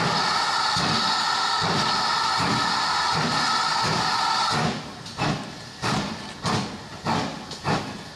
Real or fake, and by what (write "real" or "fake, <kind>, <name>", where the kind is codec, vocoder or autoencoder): real